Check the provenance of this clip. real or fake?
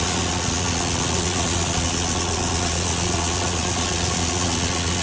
fake